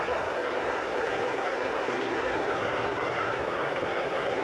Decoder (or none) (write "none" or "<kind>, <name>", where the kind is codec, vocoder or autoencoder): codec, SNAC